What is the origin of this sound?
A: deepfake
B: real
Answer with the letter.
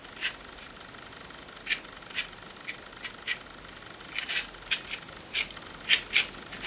B